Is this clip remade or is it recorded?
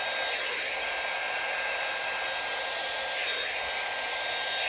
recorded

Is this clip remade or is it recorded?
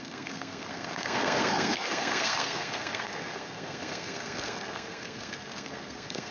remade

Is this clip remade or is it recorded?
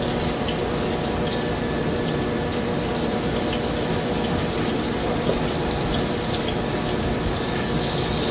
recorded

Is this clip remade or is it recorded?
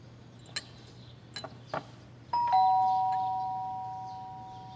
recorded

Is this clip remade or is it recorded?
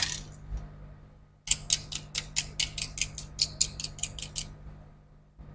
recorded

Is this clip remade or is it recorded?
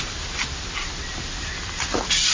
recorded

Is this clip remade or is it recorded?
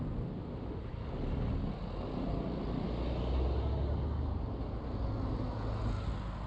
recorded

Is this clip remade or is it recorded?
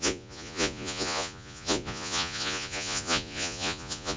remade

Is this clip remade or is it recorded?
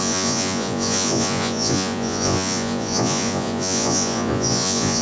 remade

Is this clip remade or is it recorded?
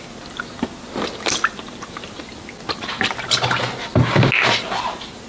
recorded